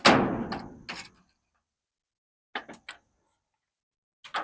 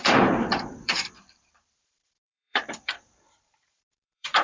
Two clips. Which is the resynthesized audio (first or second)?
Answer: second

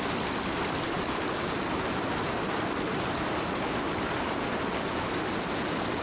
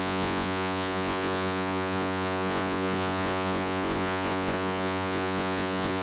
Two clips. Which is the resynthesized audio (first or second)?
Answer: second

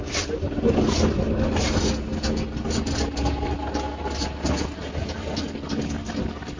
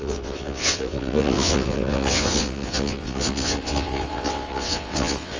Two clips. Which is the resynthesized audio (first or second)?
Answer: second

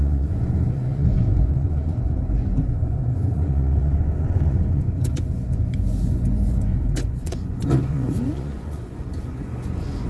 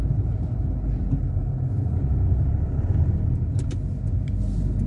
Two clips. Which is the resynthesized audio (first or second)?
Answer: first